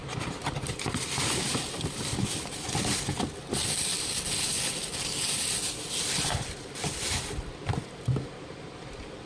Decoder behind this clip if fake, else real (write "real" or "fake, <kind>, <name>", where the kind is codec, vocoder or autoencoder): real